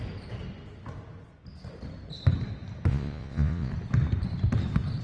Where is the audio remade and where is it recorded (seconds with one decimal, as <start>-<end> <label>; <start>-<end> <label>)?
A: 0.0-2.9 recorded; 2.9-3.7 remade; 3.7-5.0 recorded